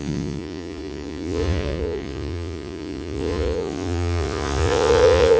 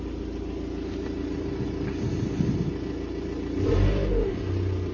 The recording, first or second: second